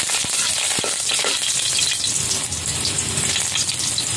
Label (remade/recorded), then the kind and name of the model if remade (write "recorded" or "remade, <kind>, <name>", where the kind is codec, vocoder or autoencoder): recorded